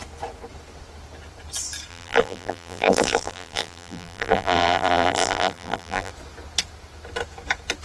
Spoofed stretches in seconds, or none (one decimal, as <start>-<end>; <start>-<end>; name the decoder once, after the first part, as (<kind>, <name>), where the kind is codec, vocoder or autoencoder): 1.9-6.1 (vocoder, BigVGAN v2)